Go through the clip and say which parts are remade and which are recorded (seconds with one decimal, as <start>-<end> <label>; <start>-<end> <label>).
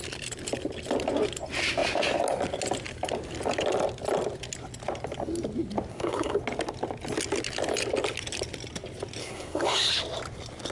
0.0-5.9 recorded; 5.9-6.4 remade; 6.4-9.2 recorded; 9.2-9.9 remade; 9.9-10.7 recorded